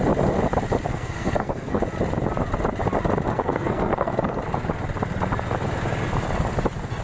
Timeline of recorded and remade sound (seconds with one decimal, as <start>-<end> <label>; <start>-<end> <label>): 0.0-0.9 recorded; 0.9-1.8 remade; 1.8-3.3 recorded; 3.3-4.4 remade; 4.4-7.0 recorded